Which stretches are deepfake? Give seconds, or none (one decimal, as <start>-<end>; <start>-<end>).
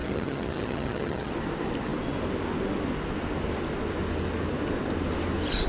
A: 0.0-1.3